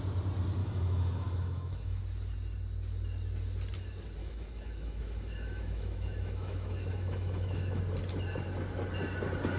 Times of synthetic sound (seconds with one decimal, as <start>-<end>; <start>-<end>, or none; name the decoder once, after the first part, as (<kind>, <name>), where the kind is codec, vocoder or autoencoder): 0.6-2.0 (autoencoder, DAC-VAE); 4.2-7.8